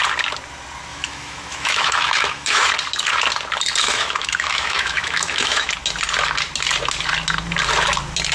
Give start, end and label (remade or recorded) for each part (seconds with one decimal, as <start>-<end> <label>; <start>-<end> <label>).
0.0-0.9 recorded; 0.9-2.7 remade; 2.7-3.8 recorded; 3.8-5.7 remade; 5.7-8.3 recorded